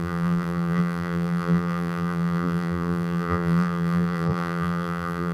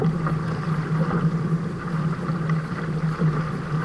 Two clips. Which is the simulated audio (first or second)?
first